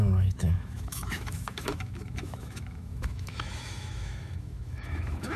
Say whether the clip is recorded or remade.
remade